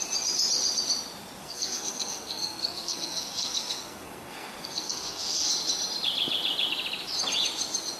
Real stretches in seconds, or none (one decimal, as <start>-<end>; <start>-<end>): 0.0-1.4; 5.5-8.0